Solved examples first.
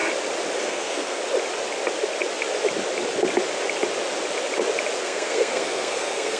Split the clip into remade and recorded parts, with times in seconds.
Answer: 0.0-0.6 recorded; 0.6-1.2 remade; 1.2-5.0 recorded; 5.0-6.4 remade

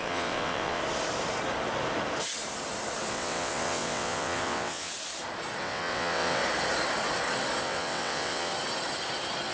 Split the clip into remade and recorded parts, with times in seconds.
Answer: 0.0-0.8 remade; 0.8-3.1 recorded; 3.1-4.9 remade; 4.9-5.6 recorded; 5.6-6.4 remade; 6.4-7.6 recorded; 7.6-8.5 remade; 8.5-9.5 recorded

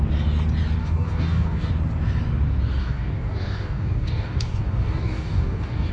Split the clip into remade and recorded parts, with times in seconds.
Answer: 0.0-0.8 recorded; 0.8-1.7 remade; 1.7-2.8 recorded; 2.8-5.9 remade